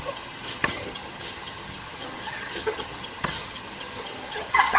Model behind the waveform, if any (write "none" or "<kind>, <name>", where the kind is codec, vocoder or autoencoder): vocoder, HiFi-GAN